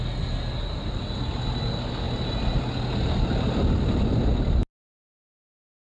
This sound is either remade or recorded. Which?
recorded